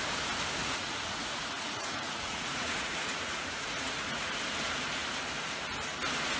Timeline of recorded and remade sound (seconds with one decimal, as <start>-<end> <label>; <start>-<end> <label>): 0.0-0.6 recorded; 0.6-4.4 remade; 4.4-6.4 recorded